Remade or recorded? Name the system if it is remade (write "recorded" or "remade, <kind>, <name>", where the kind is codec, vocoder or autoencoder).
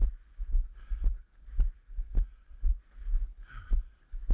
recorded